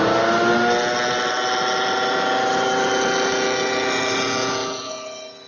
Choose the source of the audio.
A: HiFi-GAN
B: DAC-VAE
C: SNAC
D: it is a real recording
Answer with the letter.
D